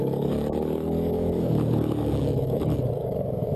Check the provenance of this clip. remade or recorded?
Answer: remade